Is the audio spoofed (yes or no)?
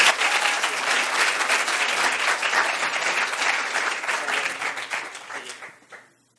no